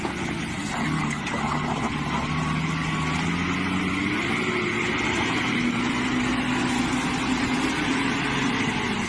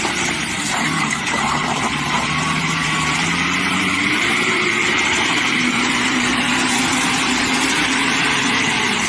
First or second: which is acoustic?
first